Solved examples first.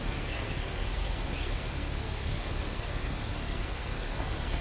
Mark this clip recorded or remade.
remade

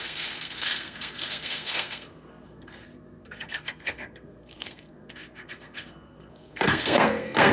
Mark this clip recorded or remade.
remade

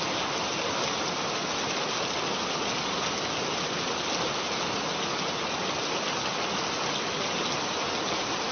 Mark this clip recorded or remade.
recorded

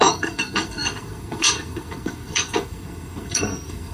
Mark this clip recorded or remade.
remade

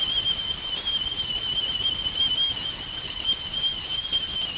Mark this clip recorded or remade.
recorded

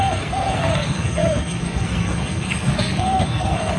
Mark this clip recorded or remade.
remade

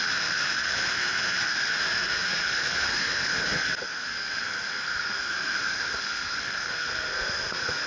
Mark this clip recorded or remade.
remade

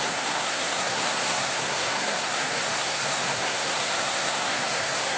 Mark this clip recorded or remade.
remade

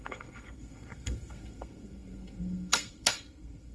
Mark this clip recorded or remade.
remade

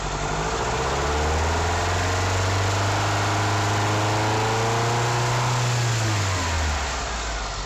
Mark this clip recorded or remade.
recorded